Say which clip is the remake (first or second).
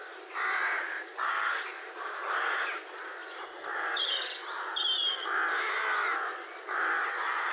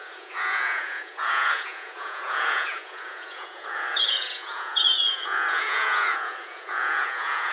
second